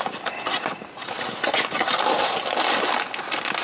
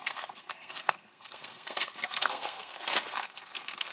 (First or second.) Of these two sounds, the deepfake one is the second